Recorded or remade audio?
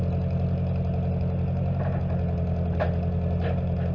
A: recorded